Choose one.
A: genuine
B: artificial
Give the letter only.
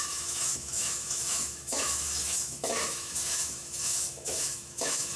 B